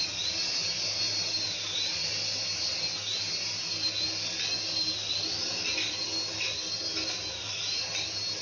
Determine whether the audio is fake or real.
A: real